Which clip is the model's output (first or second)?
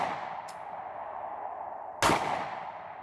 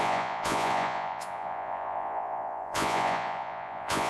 second